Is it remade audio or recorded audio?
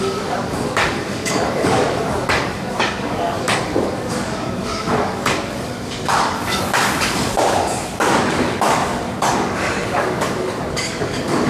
remade